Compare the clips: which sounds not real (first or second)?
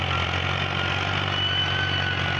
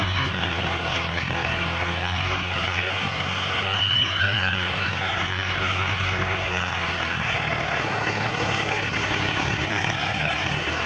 second